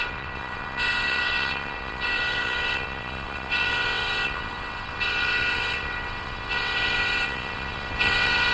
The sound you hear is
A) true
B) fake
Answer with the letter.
B